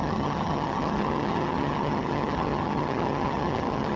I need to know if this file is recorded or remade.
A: remade